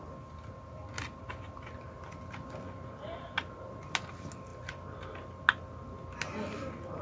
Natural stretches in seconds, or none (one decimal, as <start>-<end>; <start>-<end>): 0.0-7.0